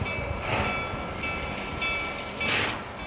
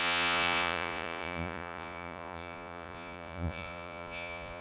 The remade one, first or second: second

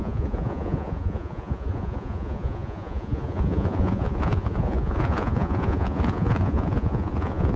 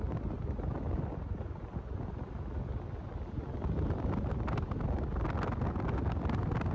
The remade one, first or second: first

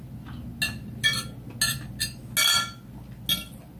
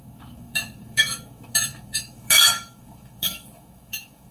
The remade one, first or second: second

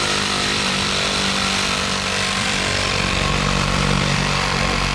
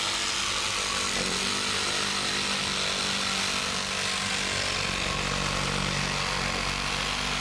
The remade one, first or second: first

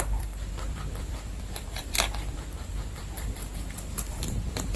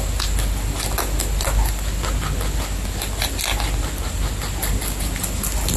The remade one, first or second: first